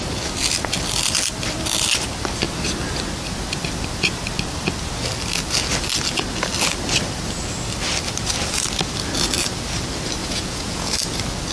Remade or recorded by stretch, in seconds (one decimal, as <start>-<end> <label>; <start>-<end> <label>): 0.0-10.2 recorded; 10.2-10.9 remade; 10.9-11.5 recorded